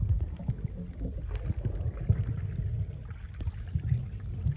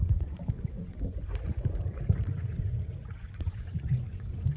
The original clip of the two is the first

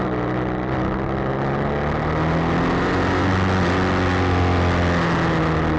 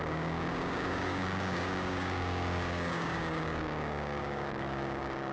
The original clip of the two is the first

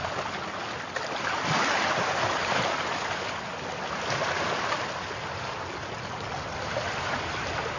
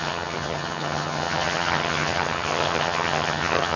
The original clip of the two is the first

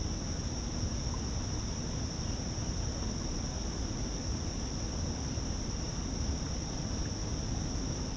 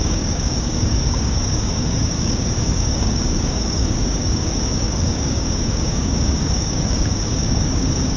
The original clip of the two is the first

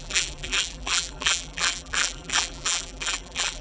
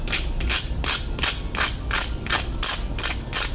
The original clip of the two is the second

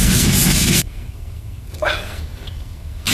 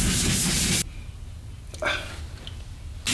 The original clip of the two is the second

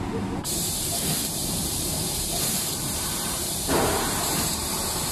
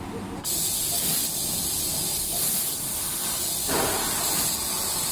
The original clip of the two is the second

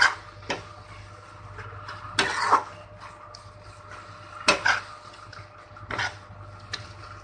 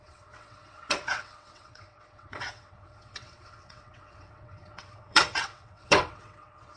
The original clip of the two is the first